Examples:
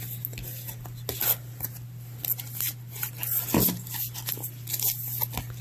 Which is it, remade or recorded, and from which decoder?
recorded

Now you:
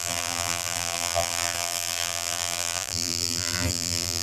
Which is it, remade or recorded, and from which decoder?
remade, vocoder, BigVGAN v2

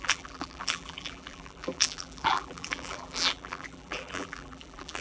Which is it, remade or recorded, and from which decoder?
remade, vocoder, BigVGAN v2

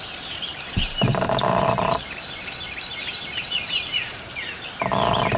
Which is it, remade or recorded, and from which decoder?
remade, vocoder, BigVGAN v2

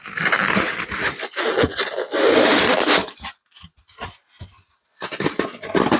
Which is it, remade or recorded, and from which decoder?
recorded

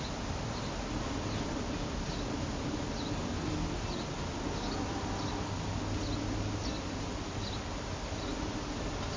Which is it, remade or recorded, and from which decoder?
recorded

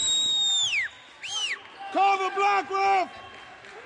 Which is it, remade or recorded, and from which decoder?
recorded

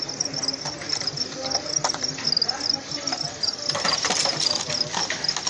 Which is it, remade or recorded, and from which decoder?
recorded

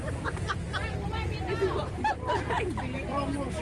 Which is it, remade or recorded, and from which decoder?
recorded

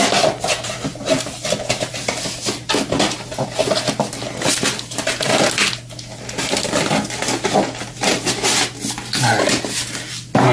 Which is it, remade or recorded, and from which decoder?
recorded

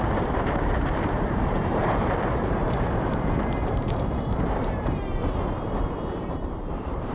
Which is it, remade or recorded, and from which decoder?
remade, vocoder, BigVGAN v2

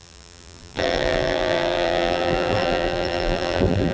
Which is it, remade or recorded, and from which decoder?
remade, vocoder, BigVGAN v2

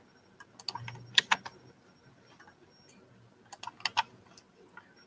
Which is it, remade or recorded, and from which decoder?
recorded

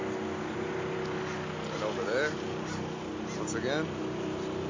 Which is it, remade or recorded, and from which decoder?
recorded